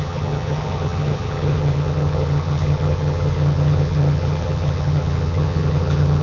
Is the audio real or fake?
fake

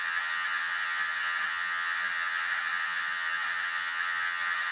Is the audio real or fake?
fake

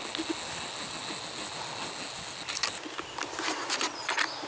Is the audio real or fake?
real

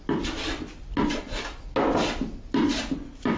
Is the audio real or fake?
real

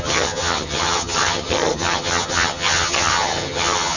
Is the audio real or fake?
fake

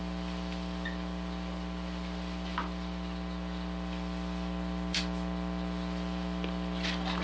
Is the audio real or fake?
real